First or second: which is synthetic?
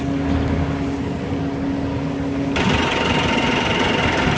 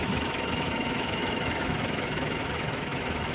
second